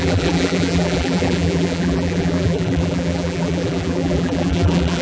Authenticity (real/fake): fake